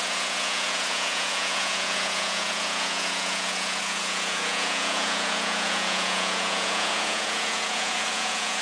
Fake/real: fake